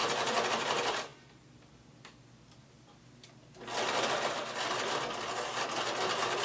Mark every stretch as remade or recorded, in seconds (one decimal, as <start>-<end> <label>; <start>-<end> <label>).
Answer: 0.0-6.4 recorded